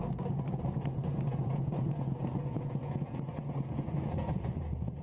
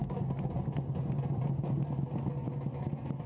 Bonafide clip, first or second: second